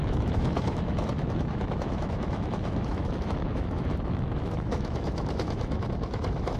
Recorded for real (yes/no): no